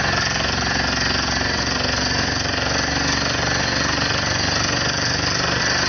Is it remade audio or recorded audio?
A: recorded